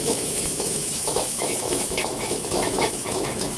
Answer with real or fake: fake